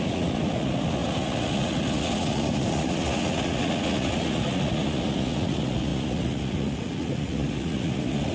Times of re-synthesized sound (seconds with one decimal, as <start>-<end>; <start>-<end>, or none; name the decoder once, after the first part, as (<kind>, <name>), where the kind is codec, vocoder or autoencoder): 0.0-8.3 (vocoder, Vocos)